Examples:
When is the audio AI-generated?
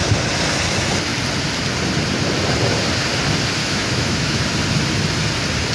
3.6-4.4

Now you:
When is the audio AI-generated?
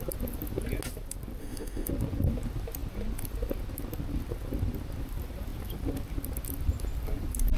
1.4-1.9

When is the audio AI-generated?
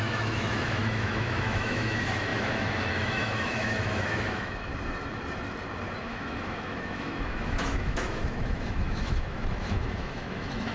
0.0-4.7; 6.0-10.7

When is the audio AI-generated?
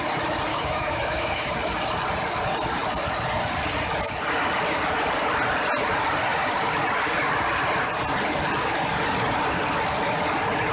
0.5-1.5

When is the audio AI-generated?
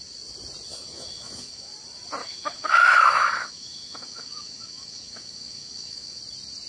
0.7-1.7; 2.2-6.2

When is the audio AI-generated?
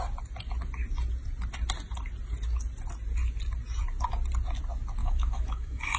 5.0-6.0